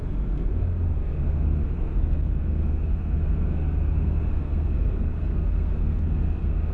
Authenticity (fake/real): fake